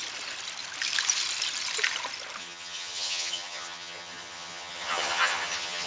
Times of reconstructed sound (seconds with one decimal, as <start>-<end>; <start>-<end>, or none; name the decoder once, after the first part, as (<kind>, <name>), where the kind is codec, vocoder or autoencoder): 2.4-5.9 (vocoder, HiFi-GAN)